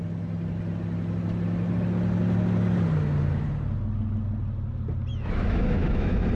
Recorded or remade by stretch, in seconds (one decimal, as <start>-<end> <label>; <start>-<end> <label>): 0.0-5.1 recorded; 5.1-6.3 remade